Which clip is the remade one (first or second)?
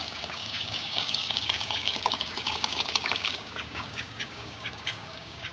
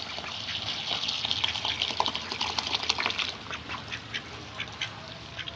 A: first